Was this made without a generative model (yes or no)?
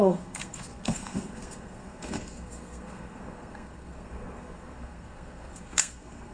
no